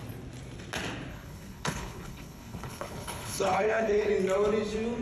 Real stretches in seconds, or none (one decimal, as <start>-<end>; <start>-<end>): 0.0-1.1; 4.1-5.0